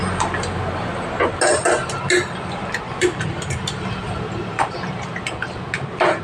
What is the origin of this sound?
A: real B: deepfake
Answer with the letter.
A